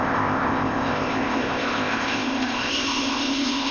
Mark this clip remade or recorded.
remade